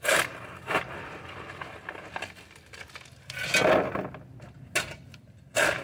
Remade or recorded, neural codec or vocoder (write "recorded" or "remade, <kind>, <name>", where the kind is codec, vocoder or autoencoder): recorded